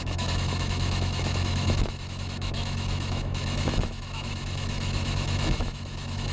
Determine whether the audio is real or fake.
fake